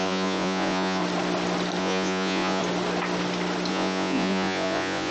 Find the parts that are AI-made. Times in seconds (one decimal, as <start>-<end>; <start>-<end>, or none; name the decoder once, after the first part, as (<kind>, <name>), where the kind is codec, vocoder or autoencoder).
0.0-1.0 (vocoder, Vocos); 1.8-2.6; 3.7-5.1